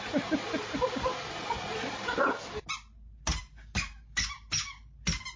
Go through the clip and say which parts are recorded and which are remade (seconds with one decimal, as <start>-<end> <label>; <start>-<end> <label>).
0.0-5.4 recorded